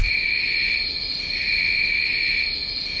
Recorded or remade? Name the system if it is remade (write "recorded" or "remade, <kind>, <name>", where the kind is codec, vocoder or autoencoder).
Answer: recorded